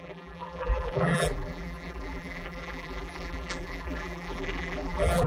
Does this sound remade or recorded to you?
remade